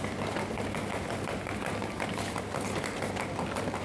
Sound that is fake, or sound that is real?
real